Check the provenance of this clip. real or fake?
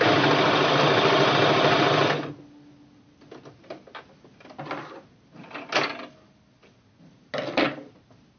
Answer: real